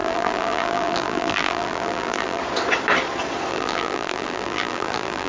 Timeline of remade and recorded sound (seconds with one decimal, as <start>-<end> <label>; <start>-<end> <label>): 0.0-2.4 remade; 2.4-3.5 recorded; 3.5-5.3 remade